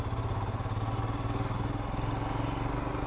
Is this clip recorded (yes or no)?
yes